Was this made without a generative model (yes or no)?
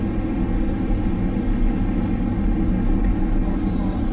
yes